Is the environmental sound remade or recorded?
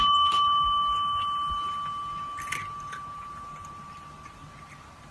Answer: recorded